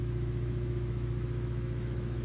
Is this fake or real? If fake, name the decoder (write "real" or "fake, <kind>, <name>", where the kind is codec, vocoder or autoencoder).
fake, autoencoder, DAC-VAE